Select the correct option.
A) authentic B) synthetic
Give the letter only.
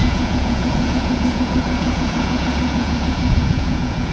B